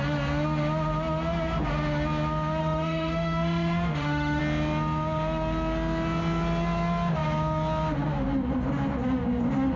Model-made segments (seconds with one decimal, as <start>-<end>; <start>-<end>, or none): 2.6-4.4